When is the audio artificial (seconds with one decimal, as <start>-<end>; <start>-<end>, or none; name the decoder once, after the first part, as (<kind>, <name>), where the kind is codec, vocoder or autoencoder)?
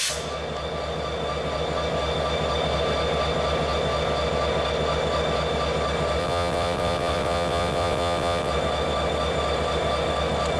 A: 6.2-8.5 (vocoder, WaveNeXt)